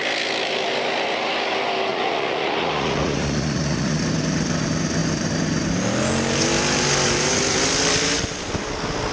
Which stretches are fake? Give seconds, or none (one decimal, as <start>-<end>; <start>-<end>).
1.9-4.0